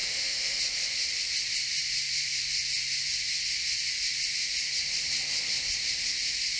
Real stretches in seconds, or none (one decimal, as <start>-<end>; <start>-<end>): 0.6-6.6